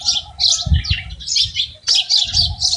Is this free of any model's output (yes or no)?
yes